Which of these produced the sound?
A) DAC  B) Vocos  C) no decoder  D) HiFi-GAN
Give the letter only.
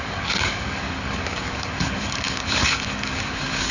A